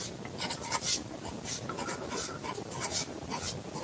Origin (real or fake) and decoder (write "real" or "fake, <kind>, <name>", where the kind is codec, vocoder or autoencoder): real